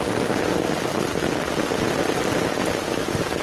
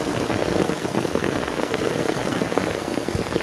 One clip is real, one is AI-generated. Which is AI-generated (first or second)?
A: second